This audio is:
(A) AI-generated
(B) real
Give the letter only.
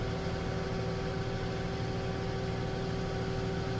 B